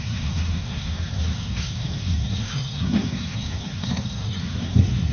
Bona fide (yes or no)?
no